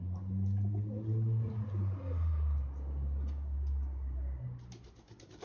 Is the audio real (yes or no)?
yes